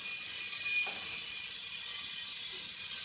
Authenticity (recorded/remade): recorded